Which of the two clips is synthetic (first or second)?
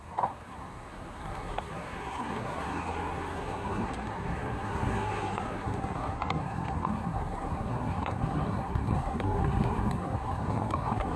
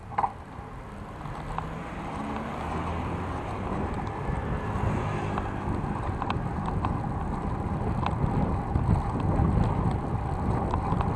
first